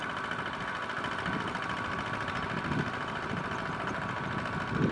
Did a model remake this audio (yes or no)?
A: no